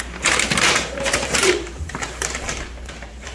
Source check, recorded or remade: remade